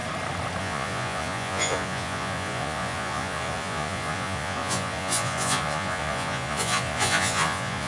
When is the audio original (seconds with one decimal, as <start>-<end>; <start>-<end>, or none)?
0.0-0.6